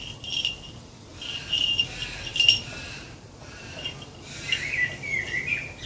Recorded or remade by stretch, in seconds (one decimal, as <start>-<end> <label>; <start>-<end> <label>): 0.0-2.3 recorded; 2.3-4.6 remade; 4.6-5.9 recorded